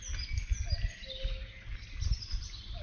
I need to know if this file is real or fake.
real